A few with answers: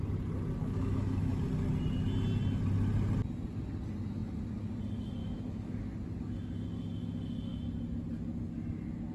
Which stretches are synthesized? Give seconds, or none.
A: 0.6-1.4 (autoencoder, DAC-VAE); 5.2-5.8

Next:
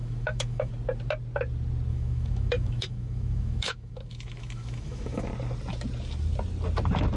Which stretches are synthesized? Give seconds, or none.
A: 0.0-0.7 (autoencoder, DAC-VAE); 1.9-5.3

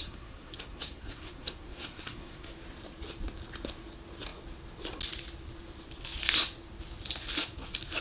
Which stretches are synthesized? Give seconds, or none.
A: 0.0-2.5 (codec, SNAC)

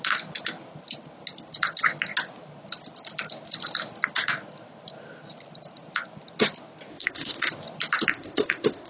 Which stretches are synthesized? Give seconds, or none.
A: 6.9-7.5 (autoencoder, DAC-VAE); 8.1-8.9

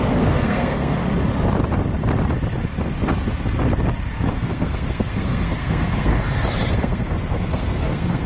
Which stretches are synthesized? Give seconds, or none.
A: 0.0-1.0 (codec, SNAC); 4.3-6.1; 6.7-8.3

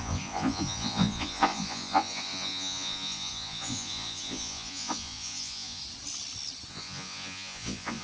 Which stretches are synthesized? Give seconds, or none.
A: 0.0-5.8 (vocoder, Vocos); 6.7-8.0